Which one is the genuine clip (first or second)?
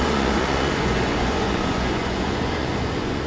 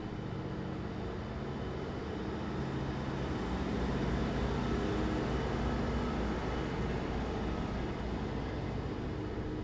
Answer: second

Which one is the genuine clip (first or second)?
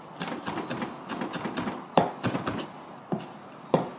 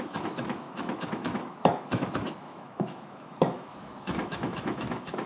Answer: first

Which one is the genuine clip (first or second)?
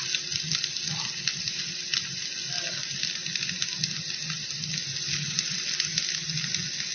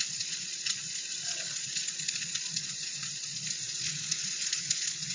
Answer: first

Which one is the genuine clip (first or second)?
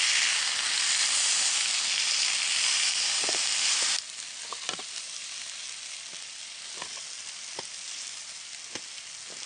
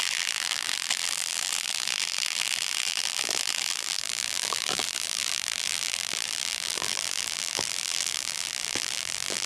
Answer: first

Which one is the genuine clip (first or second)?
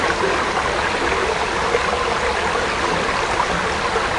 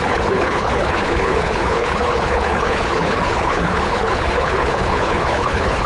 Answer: first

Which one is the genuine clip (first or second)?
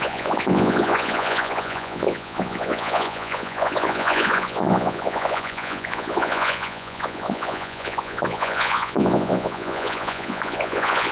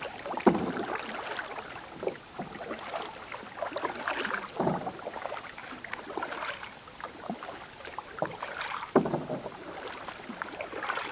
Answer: second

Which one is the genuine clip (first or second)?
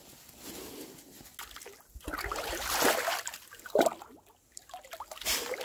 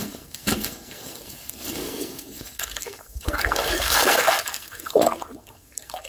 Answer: first